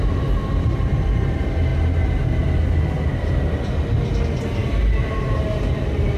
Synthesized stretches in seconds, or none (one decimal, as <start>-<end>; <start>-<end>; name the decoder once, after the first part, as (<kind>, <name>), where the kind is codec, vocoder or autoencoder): none